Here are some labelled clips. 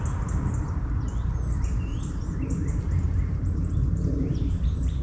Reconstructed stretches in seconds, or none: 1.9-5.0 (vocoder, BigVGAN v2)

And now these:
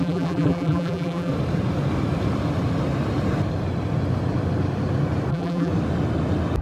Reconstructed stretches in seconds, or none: 0.0-1.3 (vocoder, BigVGAN v2); 5.3-5.7

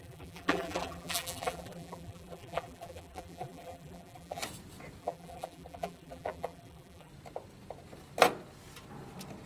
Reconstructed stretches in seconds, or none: 0.0-4.4 (vocoder, BigVGAN v2); 5.0-7.1

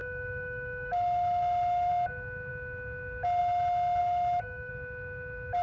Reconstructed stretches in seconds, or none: 0.0-1.9 (autoencoder, DAC-VAE); 4.0-4.7

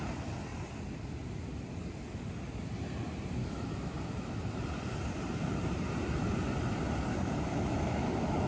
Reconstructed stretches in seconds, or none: 3.4-4.4 (autoencoder, DAC-VAE); 7.5-8.5

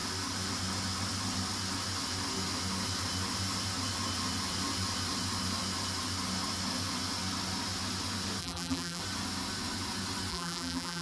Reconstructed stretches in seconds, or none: 8.4-9.0 (vocoder, BigVGAN v2); 10.3-11.0